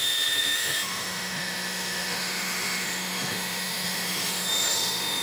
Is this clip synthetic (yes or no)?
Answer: yes